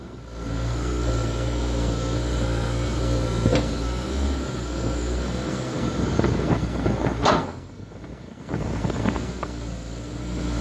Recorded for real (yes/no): no